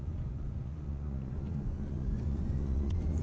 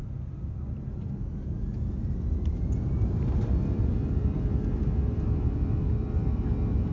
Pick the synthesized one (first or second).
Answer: first